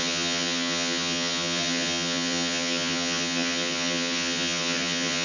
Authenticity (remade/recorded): remade